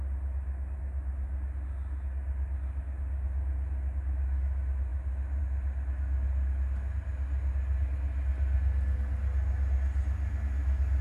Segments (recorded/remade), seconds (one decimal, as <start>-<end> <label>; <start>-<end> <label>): 0.0-11.0 recorded